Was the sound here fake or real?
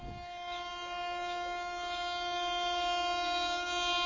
real